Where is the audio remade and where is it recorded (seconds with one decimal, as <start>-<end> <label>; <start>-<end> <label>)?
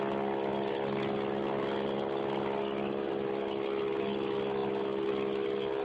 0.0-5.8 recorded